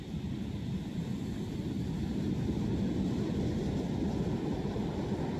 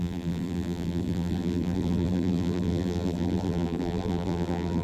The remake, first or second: second